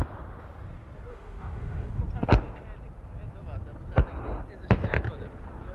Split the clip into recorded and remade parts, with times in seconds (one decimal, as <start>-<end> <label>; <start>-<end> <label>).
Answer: 0.0-1.1 recorded; 1.1-2.0 remade; 2.0-5.7 recorded